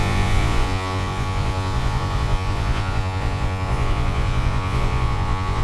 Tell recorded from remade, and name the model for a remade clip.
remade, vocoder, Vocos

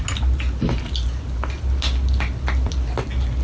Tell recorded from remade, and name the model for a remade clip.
recorded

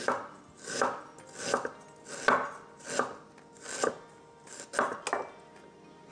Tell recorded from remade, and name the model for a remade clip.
recorded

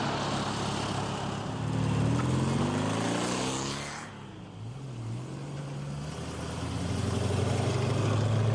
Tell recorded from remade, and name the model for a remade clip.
recorded